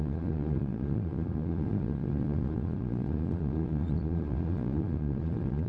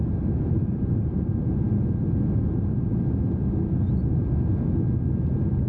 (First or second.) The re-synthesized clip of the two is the first